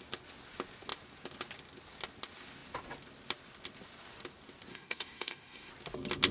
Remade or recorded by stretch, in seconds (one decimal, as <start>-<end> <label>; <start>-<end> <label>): 0.0-4.7 recorded; 4.7-5.7 remade; 5.7-6.3 recorded